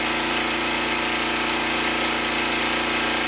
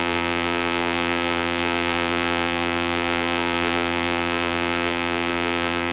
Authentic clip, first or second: first